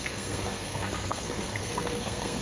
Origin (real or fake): fake